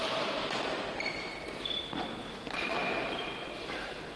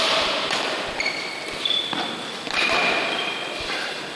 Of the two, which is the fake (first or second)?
second